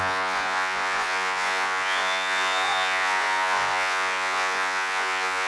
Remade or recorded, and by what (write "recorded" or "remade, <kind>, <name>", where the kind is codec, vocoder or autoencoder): remade, vocoder, Vocos